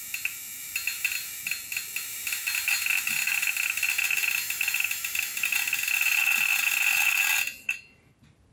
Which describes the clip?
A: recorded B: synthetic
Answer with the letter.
A